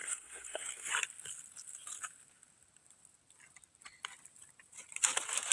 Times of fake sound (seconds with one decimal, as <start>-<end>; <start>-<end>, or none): 0.0-0.9

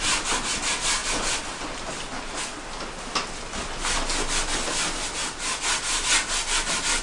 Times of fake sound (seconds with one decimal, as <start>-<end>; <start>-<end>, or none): none

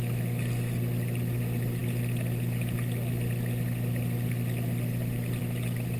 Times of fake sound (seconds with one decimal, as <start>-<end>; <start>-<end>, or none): none

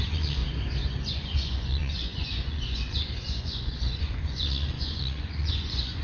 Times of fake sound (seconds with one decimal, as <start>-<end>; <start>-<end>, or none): 0.0-0.4; 1.1-6.0

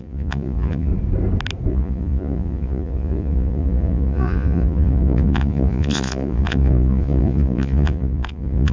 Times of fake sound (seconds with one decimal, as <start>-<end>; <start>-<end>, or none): 0.0-0.9; 1.7-8.7

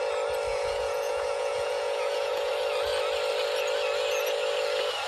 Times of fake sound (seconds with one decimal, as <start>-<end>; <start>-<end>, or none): 0.5-2.5

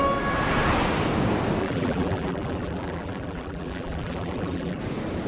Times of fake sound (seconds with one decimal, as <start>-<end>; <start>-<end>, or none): 1.6-4.8